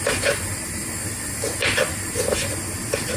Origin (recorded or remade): recorded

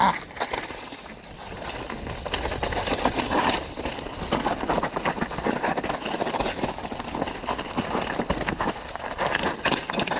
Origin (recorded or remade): recorded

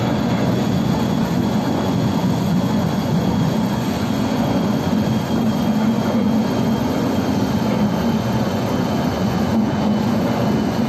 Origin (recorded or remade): remade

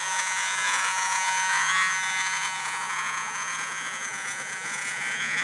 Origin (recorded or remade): remade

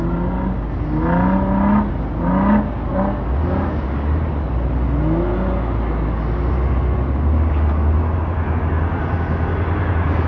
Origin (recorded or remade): recorded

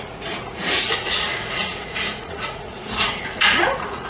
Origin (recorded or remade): remade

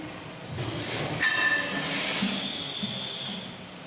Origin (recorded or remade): recorded